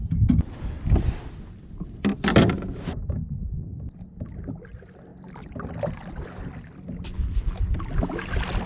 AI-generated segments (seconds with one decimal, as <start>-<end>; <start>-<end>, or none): none